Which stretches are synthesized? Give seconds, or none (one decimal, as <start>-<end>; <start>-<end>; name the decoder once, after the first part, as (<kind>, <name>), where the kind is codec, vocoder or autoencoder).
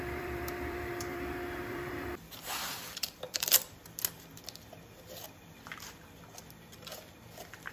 0.0-3.8 (vocoder, BigVGAN v2)